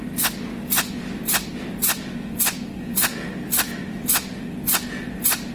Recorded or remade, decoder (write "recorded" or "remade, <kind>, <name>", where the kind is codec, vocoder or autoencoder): recorded